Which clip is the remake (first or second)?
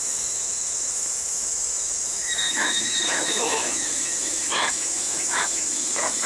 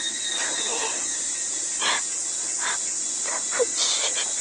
first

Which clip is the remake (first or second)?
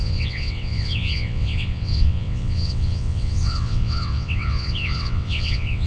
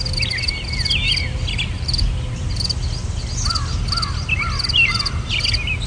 first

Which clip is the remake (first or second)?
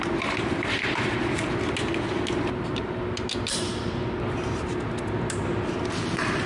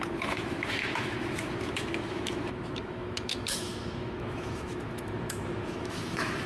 second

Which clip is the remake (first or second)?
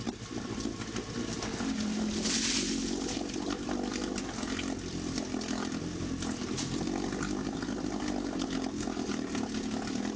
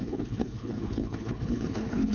second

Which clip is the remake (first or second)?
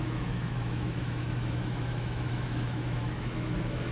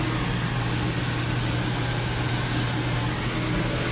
first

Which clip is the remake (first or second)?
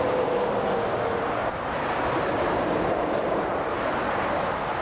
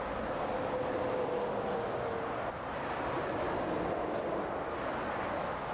first